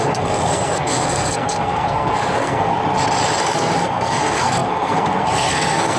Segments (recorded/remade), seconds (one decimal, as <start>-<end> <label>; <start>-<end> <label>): 0.0-2.8 remade; 2.8-3.4 recorded; 3.4-6.0 remade